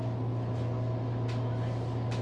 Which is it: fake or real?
real